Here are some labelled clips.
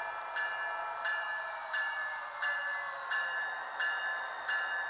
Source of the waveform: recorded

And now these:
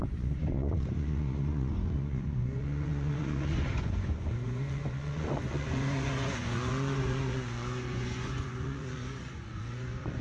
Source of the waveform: remade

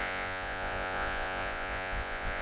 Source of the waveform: remade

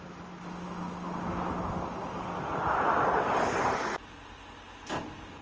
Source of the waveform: recorded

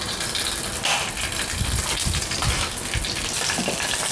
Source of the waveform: recorded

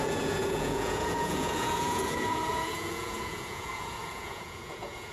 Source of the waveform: remade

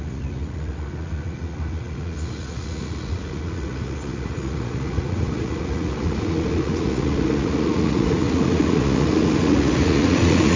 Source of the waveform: remade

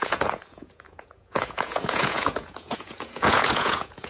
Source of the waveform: remade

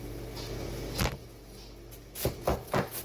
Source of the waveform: recorded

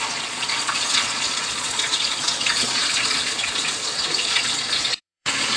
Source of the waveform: remade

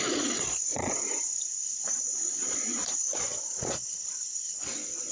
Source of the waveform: remade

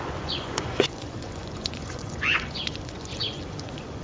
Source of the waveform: remade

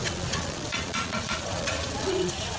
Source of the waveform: remade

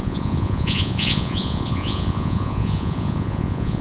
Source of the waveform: remade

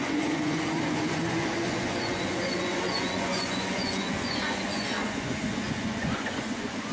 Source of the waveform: remade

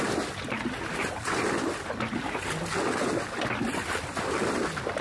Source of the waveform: recorded